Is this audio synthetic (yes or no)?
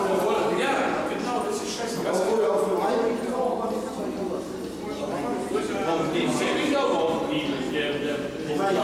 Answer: no